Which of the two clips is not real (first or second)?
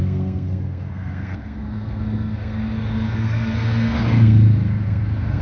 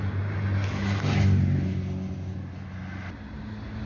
first